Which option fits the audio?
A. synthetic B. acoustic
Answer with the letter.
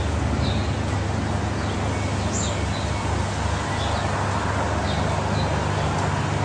B